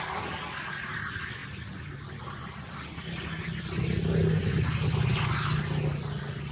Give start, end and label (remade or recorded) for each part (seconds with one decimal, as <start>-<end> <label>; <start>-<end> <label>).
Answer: 0.0-6.5 recorded

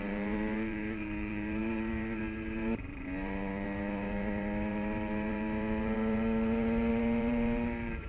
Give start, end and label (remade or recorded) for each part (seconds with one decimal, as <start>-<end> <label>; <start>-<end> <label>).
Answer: 0.0-8.1 remade

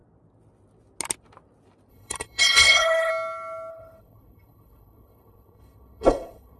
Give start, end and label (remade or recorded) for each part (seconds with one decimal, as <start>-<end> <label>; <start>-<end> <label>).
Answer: 0.0-1.9 recorded; 1.9-3.1 remade; 3.1-3.7 recorded; 3.7-6.6 remade

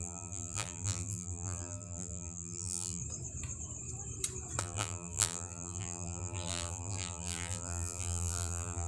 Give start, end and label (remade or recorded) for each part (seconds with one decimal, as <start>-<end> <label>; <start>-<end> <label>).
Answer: 0.0-3.0 remade; 3.0-4.6 recorded; 4.6-8.9 remade

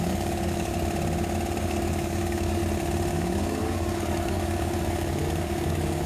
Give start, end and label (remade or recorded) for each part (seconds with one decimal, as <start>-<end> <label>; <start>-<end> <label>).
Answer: 0.0-0.7 remade; 0.7-1.7 recorded; 1.7-2.6 remade; 2.6-3.1 recorded; 3.1-6.1 remade

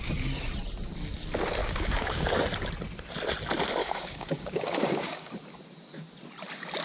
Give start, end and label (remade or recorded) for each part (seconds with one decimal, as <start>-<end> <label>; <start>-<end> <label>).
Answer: 0.0-1.6 recorded; 1.6-2.3 remade; 2.3-3.8 recorded; 3.8-5.3 remade; 5.3-6.8 recorded